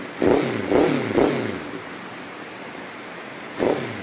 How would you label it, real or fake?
real